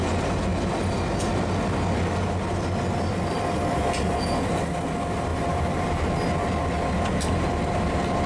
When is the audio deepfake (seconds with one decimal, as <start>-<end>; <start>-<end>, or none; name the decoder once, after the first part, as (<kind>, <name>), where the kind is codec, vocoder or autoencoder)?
5.3-5.9 (vocoder, BigVGAN v2)